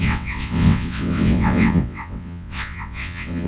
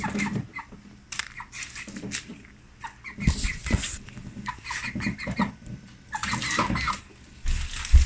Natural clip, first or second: second